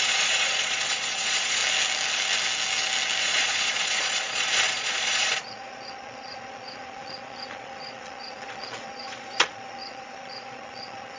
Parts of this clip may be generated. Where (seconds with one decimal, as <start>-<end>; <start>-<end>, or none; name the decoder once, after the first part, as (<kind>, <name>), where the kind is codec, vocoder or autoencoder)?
0.0-1.6 (vocoder, Vocos); 3.2-11.2